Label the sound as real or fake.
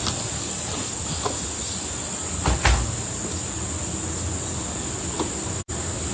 real